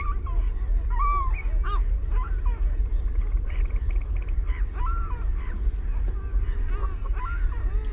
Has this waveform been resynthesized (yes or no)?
no